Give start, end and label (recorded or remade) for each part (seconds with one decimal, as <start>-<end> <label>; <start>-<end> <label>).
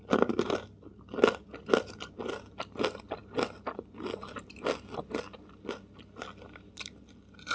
0.0-7.5 recorded